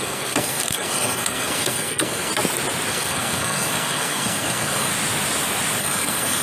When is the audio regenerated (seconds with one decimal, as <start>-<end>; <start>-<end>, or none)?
0.0-2.3; 2.9-4.9; 5.8-6.4